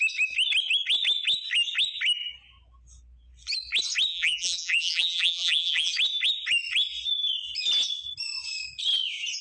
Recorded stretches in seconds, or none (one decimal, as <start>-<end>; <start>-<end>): 0.0-4.1; 5.9-9.4